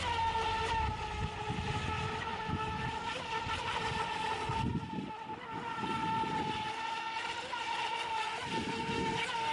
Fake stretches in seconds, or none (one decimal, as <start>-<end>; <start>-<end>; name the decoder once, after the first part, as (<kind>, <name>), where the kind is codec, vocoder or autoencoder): none